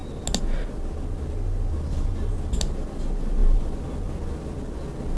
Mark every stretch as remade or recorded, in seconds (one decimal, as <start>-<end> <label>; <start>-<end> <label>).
0.0-5.2 recorded